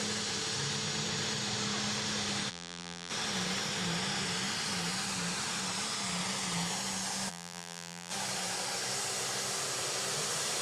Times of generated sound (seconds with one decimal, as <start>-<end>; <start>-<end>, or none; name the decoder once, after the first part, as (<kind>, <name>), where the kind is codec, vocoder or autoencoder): 2.5-3.1 (vocoder, BigVGAN v2); 7.3-8.1